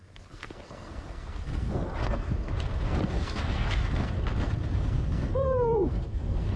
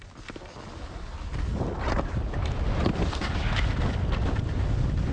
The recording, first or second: second